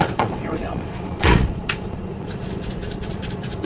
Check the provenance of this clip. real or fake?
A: fake